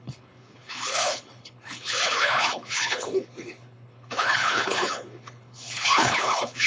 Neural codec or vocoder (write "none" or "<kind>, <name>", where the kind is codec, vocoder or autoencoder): codec, HILCodec